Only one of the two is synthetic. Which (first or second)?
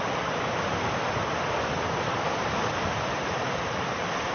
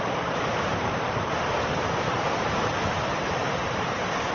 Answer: second